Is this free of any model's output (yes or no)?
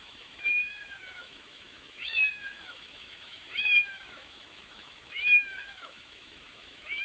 no